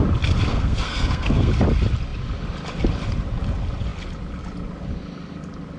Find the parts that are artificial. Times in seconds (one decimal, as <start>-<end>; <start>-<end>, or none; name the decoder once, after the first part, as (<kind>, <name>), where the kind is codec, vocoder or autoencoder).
0.5-1.5 (codec, SNAC)